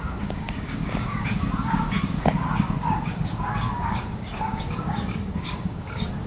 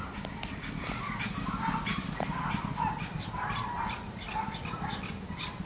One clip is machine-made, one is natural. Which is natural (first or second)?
second